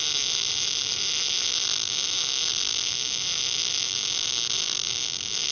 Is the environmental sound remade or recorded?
recorded